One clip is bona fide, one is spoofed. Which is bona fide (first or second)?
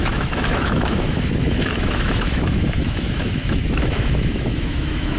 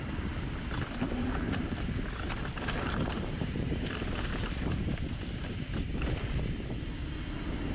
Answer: second